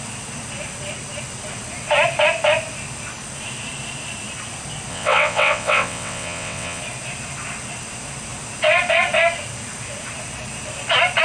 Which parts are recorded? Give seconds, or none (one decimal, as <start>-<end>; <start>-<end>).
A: 0.0-4.9; 6.8-11.2